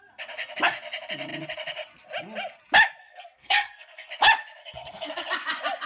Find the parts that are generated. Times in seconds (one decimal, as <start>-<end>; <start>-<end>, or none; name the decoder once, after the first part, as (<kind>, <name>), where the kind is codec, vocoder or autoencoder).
3.0-4.1 (codec, SNAC); 4.6-5.1